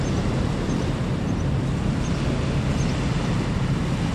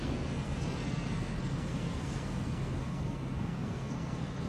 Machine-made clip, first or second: second